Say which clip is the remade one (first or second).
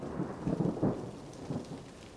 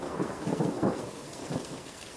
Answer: second